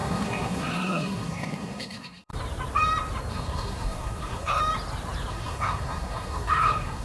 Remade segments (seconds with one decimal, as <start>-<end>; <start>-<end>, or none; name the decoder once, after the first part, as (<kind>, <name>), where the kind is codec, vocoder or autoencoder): 0.0-2.3 (codec, SNAC); 3.3-4.6; 5.3-7.0